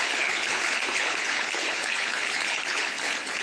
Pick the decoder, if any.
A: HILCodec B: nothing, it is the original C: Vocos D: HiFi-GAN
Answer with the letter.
A